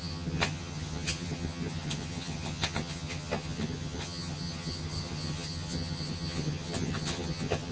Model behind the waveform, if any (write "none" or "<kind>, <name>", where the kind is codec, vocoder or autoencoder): vocoder, HiFi-GAN